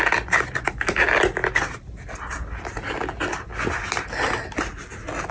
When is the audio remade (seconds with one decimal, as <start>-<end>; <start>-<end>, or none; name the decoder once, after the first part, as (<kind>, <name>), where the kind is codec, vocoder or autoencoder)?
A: none